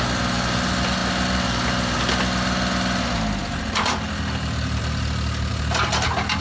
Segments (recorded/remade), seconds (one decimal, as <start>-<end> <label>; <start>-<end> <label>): 0.0-6.4 recorded